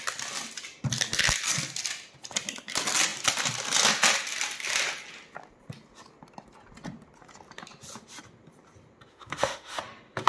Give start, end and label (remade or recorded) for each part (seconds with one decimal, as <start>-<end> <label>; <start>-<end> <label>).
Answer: 0.0-9.1 recorded; 9.1-9.8 remade; 9.8-10.3 recorded